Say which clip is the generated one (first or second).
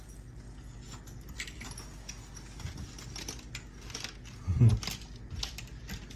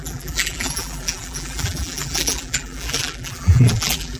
second